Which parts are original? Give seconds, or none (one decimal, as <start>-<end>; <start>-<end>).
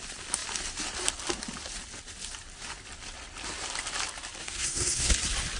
0.0-4.4; 5.1-5.6